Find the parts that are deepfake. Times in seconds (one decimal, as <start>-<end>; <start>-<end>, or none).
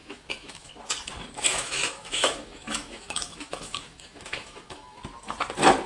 0.0-0.7; 1.5-5.0